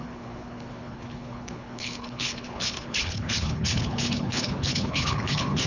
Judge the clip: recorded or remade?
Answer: remade